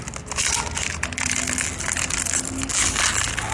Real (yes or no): yes